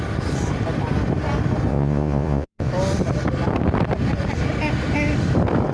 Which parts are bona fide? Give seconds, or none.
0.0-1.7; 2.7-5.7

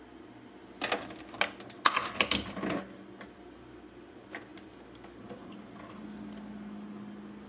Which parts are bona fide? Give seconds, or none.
0.0-7.5